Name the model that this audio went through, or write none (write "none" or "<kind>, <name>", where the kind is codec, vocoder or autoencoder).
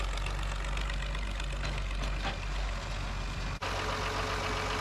none